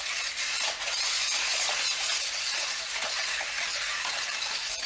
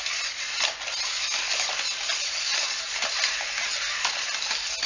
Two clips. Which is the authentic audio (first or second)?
second